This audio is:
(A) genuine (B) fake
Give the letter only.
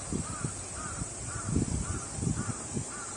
A